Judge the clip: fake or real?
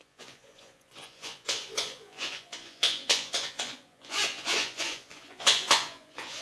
fake